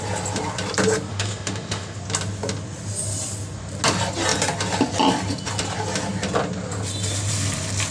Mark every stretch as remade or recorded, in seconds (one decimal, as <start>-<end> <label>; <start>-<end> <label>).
0.0-1.1 recorded; 1.1-2.0 remade; 2.0-7.9 recorded